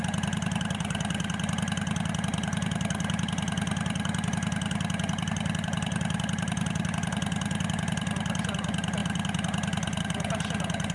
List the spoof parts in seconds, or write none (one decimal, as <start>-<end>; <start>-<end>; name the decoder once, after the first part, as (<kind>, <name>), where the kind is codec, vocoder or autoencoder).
none